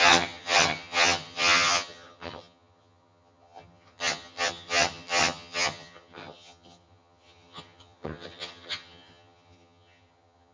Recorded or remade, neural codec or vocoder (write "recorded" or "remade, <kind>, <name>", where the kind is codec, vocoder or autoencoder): remade, vocoder, HiFi-GAN